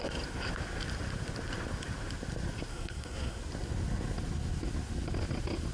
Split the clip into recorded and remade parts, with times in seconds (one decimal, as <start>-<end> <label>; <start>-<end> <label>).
0.0-2.7 recorded; 2.7-3.4 remade; 3.4-5.7 recorded